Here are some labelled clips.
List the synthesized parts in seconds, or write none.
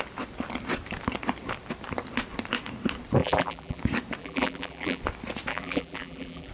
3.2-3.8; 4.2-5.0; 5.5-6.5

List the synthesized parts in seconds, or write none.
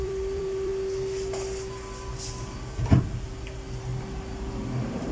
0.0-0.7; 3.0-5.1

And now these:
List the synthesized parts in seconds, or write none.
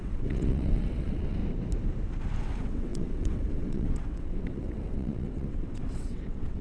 0.0-1.4; 2.4-6.6